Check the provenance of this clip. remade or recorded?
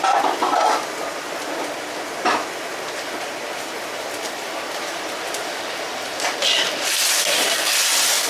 remade